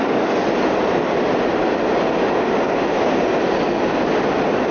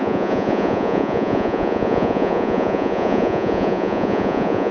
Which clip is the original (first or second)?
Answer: first